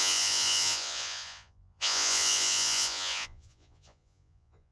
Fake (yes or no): yes